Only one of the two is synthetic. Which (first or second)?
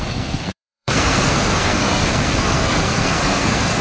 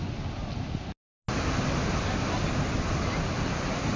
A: first